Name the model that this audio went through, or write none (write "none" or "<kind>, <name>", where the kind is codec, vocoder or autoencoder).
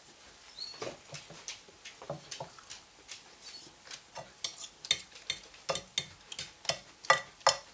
none